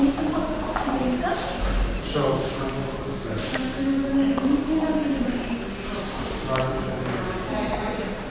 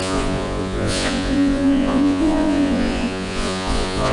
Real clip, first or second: first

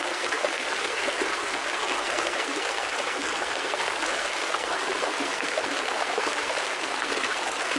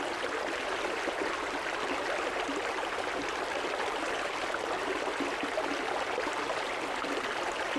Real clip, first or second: second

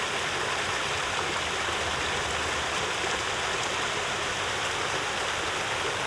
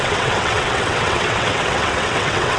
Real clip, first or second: first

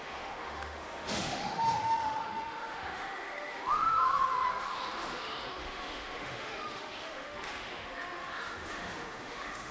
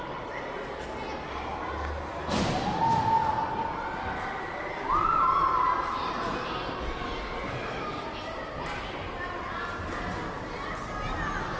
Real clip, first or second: second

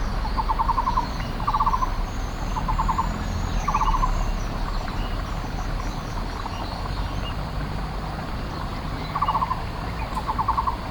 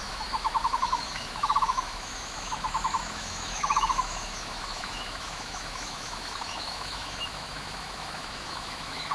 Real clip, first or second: first